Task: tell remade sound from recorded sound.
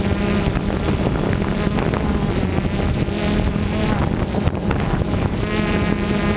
recorded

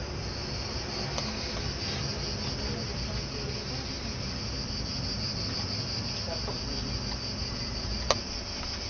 recorded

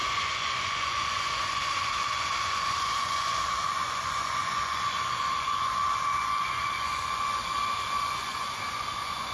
remade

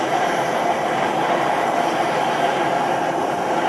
remade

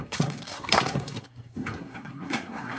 remade